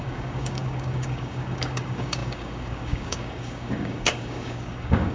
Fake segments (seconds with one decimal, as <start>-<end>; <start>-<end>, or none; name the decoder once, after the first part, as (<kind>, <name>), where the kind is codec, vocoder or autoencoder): 0.0-5.1 (codec, DAC)